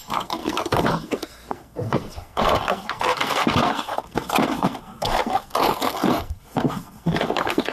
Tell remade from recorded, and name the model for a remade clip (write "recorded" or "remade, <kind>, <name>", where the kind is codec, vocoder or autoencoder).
remade, codec, SNAC